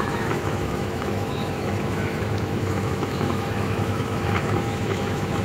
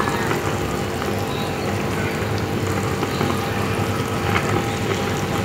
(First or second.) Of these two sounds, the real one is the second